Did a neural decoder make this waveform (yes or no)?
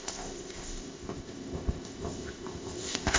yes